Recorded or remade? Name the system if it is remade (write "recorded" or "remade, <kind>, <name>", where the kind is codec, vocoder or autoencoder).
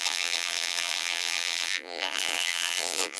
remade, vocoder, BigVGAN v2